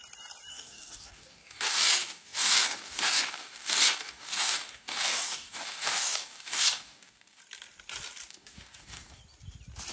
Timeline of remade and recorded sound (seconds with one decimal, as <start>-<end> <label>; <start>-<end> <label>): 0.0-0.5 recorded; 0.5-7.4 remade; 7.4-8.3 recorded; 8.3-9.2 remade; 9.2-9.9 recorded